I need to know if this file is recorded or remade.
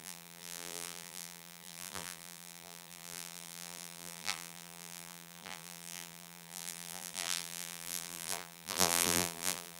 remade